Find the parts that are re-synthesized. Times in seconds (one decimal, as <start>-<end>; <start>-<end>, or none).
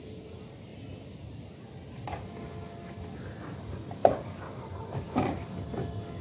none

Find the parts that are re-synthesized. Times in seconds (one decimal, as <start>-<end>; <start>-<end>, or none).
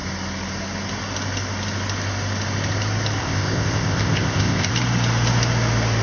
3.2-4.7